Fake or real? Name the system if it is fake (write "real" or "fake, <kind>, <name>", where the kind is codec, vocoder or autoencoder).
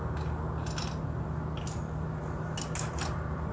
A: real